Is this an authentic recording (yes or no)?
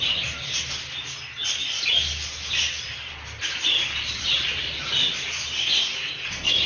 yes